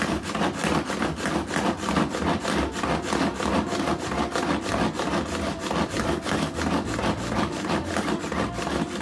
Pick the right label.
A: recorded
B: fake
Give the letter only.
A